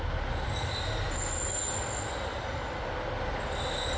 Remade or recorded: recorded